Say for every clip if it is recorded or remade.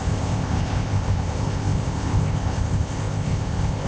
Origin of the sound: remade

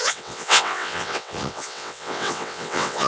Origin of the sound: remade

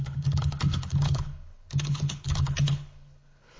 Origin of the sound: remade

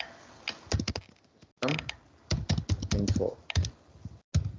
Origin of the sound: recorded